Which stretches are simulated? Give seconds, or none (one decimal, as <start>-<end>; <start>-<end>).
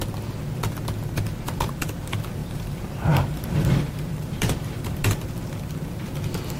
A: 2.4-4.8